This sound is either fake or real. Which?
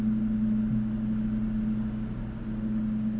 real